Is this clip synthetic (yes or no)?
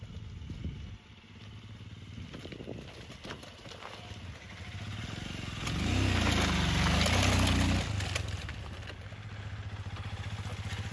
no